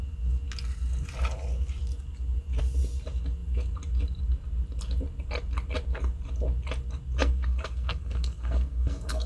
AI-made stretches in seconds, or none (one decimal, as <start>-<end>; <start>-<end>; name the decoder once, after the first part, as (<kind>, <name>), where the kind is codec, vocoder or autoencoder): 7.2-9.3 (codec, SNAC)